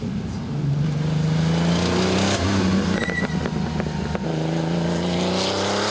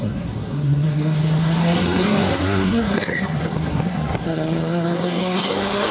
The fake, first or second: second